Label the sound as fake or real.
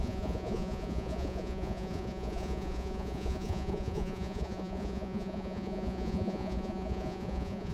fake